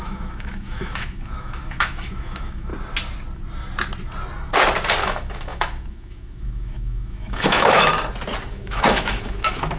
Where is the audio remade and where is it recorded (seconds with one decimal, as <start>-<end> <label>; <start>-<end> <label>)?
0.0-2.7 remade; 2.7-5.0 recorded; 5.0-7.9 remade; 7.9-8.5 recorded; 8.5-9.8 remade